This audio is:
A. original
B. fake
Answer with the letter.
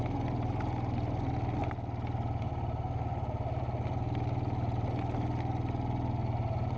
A